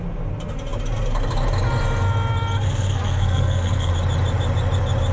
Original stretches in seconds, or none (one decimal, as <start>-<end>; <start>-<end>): 0.0-2.6; 3.9-5.1